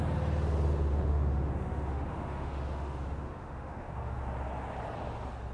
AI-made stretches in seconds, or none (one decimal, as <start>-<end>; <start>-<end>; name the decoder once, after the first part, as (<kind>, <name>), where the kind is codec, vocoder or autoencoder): 0.9-4.2 (autoencoder, DAC-VAE)